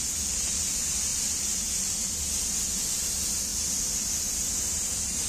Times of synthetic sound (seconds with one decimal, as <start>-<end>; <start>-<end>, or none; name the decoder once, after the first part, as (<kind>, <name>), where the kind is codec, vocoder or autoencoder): 1.1-2.2 (vocoder, BigVGAN v2)